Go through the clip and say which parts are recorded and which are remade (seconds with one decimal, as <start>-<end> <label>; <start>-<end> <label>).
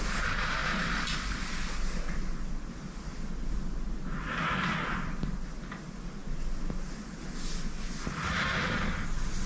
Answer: 0.0-9.5 recorded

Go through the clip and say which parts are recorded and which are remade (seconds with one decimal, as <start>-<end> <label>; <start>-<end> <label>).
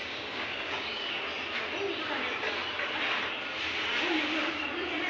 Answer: 0.0-1.2 remade; 1.2-5.1 recorded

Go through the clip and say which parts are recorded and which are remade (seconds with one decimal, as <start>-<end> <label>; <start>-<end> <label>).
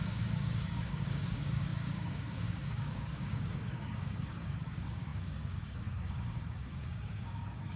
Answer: 0.0-7.8 remade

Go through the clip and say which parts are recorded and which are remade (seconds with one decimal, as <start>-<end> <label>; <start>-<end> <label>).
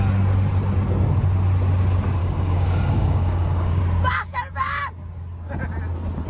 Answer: 0.0-2.2 recorded; 2.2-3.8 remade; 3.8-6.3 recorded